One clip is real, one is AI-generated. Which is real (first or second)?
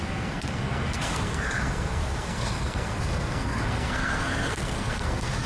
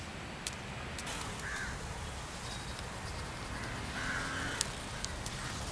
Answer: second